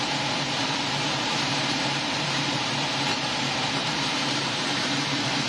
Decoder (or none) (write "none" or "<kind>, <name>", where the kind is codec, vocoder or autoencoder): vocoder, BigVGAN v2